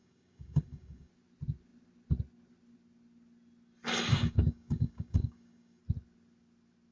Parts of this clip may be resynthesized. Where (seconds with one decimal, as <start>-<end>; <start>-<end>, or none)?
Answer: 0.0-1.1; 4.1-5.8